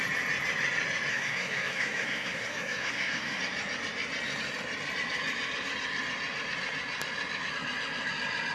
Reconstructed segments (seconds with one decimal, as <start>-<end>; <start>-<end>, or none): 1.1-3.4